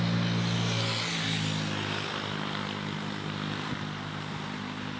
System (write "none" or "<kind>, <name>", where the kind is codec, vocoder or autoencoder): none